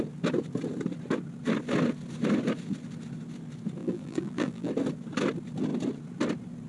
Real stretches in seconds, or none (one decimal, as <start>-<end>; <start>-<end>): 0.0-3.8; 4.7-6.7